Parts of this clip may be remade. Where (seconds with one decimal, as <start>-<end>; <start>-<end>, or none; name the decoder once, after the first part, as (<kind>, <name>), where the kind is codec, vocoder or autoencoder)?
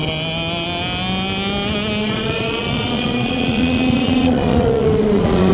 2.0-5.5 (vocoder, Vocos)